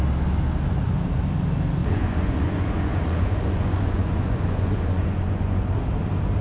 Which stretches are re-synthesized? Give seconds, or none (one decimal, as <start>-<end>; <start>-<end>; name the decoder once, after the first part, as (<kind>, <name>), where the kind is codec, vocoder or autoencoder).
1.8-5.6 (vocoder, Vocos)

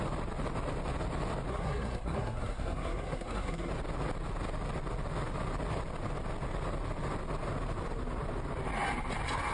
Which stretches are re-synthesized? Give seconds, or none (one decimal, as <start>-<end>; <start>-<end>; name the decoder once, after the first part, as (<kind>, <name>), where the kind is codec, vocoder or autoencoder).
1.5-3.7 (codec, SNAC)

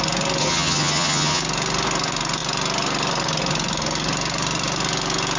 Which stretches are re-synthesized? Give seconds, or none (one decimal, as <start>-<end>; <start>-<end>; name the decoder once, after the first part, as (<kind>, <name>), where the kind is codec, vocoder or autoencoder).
0.4-1.4 (vocoder, HiFi-GAN)

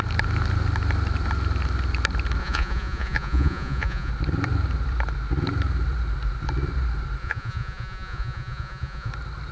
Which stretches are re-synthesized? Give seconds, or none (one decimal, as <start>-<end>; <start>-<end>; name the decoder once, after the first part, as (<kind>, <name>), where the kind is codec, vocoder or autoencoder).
2.4-4.1 (vocoder, Vocos); 7.2-9.1

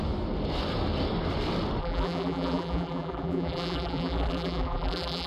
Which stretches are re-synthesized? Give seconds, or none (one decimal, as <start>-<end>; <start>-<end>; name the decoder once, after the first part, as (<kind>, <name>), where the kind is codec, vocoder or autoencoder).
1.8-5.3 (vocoder, BigVGAN v2)

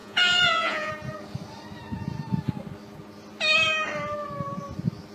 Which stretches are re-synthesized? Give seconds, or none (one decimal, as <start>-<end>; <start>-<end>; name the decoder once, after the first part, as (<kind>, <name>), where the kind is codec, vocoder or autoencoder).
0.0-0.9 (vocoder, Vocos)

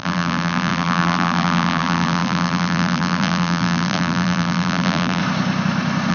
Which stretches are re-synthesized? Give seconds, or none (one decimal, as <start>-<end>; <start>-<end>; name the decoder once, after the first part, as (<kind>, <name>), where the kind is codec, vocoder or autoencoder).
0.0-5.2 (vocoder, BigVGAN v2)

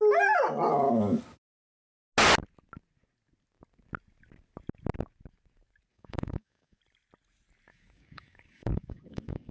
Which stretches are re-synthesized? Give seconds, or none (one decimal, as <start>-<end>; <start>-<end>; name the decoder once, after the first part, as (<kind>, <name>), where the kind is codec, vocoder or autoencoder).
0.7-1.2 (codec, DAC); 5.9-6.8; 7.7-9.5